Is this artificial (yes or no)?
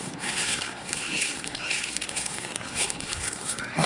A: yes